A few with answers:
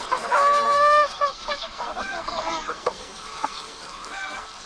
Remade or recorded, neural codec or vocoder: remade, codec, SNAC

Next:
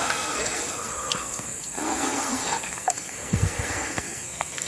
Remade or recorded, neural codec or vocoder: remade, codec, SNAC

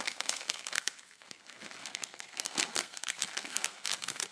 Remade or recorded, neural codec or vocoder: remade, codec, SNAC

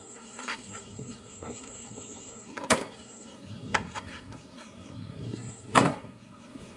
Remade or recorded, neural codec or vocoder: remade, codec, SNAC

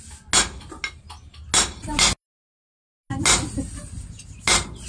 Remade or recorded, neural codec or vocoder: recorded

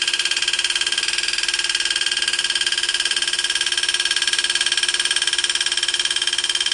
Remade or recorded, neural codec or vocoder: recorded